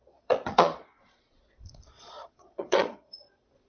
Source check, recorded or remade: remade